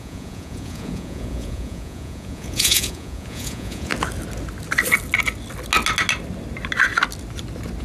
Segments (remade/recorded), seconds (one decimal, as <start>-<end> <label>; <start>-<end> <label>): 0.0-3.9 remade; 3.9-7.8 recorded